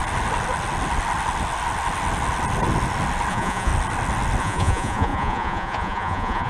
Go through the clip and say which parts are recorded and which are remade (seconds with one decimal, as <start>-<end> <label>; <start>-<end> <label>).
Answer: 0.0-3.3 recorded; 3.3-3.7 remade; 3.7-4.4 recorded; 4.4-6.5 remade